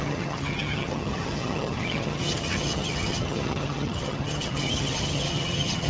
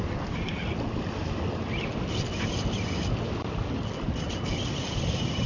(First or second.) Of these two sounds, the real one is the second